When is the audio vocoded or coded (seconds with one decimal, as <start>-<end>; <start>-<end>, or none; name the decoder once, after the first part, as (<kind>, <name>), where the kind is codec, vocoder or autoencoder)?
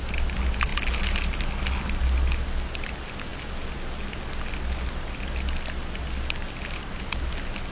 none